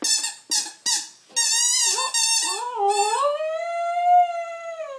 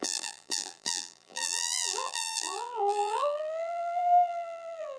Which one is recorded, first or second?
first